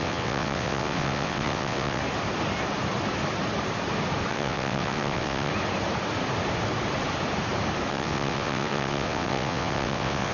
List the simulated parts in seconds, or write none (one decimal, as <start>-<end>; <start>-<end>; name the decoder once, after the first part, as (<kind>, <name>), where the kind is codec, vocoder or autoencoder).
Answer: 0.0-2.0 (vocoder, WaveNeXt); 4.3-5.5; 7.9-10.3